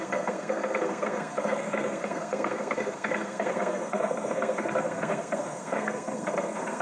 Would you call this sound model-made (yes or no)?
yes